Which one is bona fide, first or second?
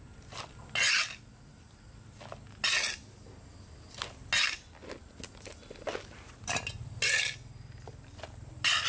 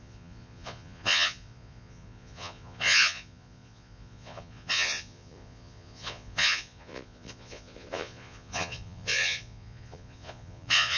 first